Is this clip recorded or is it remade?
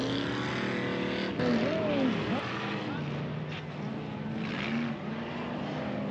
recorded